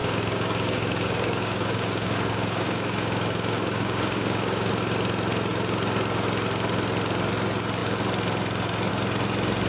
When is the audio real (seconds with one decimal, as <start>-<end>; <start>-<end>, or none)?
4.7-9.7